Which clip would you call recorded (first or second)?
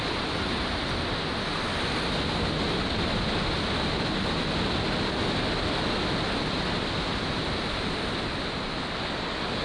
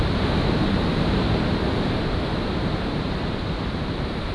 first